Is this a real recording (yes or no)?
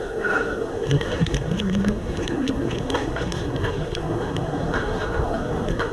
no